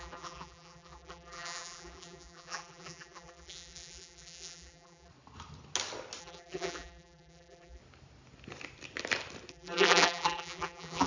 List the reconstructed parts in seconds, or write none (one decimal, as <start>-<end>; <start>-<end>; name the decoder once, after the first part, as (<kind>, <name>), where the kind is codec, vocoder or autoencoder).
0.0-5.1 (vocoder, BigVGAN v2); 6.2-7.8; 9.5-11.1